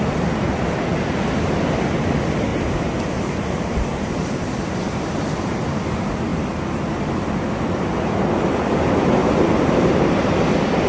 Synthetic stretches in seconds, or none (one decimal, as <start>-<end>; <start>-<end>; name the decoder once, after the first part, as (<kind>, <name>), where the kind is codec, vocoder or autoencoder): 2.5-5.8 (vocoder, BigVGAN v2); 9.2-10.3